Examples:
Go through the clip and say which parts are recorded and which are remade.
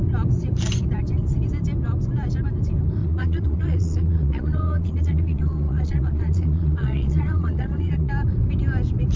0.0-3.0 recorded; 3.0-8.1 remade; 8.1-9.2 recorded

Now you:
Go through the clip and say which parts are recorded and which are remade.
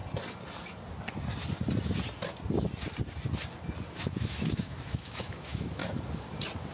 0.0-4.0 recorded; 4.0-5.8 remade; 5.8-6.7 recorded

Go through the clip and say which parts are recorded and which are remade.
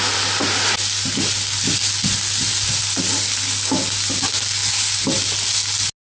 0.0-6.1 recorded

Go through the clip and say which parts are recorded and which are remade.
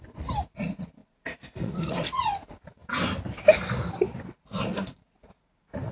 0.0-2.8 remade; 2.8-4.3 recorded; 4.3-5.9 remade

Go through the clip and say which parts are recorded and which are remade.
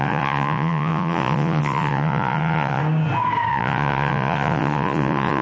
0.0-2.8 remade; 2.8-3.5 recorded; 3.5-5.4 remade